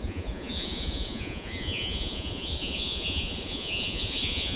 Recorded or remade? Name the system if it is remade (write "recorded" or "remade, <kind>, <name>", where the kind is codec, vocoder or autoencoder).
remade, vocoder, Vocos